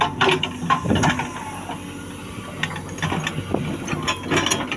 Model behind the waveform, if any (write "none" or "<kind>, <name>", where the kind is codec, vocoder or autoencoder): none